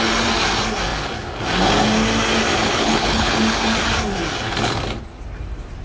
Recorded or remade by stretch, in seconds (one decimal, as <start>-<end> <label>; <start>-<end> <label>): 0.0-2.6 recorded; 2.6-3.3 remade; 3.3-5.8 recorded